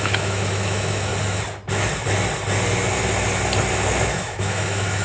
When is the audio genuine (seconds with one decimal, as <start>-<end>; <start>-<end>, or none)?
1.1-4.1

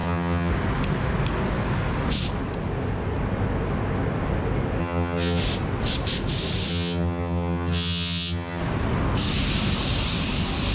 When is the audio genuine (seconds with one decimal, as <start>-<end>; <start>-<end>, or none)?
0.5-4.8; 5.4-6.7; 8.6-10.7

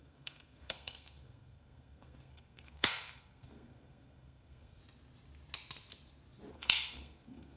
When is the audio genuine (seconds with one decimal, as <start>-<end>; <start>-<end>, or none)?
4.8-6.5

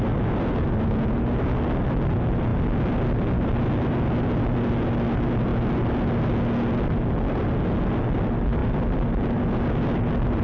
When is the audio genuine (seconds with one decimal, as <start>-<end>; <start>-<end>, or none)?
0.0-10.4